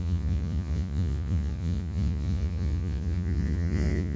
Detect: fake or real fake